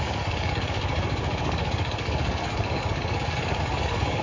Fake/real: fake